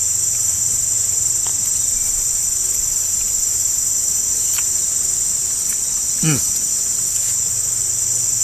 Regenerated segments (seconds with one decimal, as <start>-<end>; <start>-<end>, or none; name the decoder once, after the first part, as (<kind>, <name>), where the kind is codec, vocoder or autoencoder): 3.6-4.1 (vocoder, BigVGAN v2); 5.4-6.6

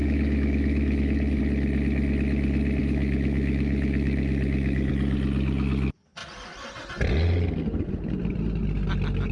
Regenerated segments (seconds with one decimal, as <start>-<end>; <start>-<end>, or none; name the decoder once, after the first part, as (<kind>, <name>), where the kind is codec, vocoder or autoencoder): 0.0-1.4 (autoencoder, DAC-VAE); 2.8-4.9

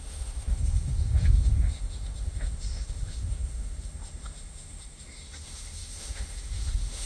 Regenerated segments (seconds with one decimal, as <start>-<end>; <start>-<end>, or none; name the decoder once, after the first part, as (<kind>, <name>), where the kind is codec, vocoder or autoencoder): 0.0-7.1 (autoencoder, DAC-VAE)

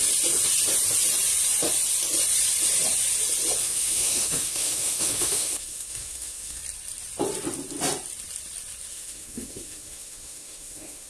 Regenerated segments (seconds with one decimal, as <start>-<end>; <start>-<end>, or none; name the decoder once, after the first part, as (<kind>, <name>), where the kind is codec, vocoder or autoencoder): 3.6-6.6 (autoencoder, DAC-VAE); 8.9-11.1

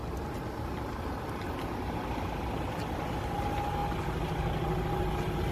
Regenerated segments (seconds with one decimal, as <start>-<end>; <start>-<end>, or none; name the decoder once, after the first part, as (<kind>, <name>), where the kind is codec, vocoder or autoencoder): none

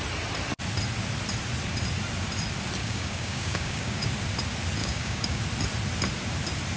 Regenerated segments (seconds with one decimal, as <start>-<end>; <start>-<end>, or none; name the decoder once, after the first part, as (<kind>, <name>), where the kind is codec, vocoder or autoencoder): 2.8-4.1 (codec, DAC); 4.8-5.4

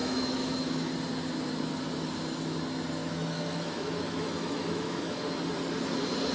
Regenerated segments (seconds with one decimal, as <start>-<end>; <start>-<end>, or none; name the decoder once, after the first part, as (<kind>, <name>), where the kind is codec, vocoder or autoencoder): 0.0-0.9 (autoencoder, DAC-VAE); 3.0-5.2

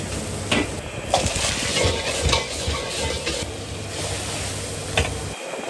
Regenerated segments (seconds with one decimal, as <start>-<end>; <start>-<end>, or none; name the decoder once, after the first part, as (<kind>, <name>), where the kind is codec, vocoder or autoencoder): 1.7-2.9 (vocoder, Vocos)